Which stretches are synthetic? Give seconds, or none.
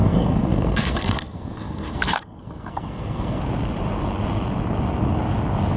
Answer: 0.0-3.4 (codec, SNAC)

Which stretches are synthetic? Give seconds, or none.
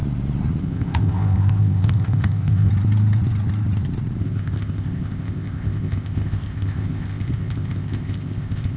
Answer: 0.6-2.7 (codec, ZipCodec); 4.2-8.8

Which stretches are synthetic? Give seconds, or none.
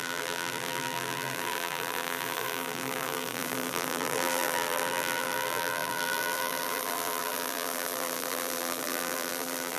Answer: 0.0-9.8 (vocoder, BigVGAN v2)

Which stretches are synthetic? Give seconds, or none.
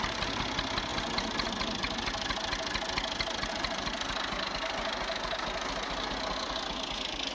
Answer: none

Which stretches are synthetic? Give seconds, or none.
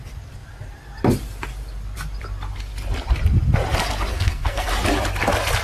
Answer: 4.1-4.7 (codec, SNAC)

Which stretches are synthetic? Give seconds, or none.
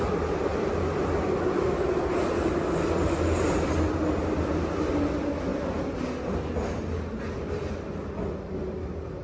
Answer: none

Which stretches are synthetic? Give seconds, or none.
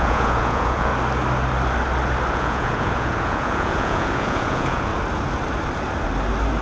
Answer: 0.0-0.9 (vocoder, Vocos); 2.3-4.9